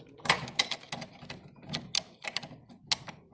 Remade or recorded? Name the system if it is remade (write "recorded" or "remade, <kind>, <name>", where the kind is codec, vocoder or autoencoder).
recorded